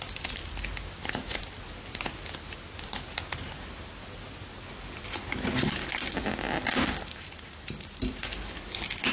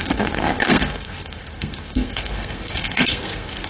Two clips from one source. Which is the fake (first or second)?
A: second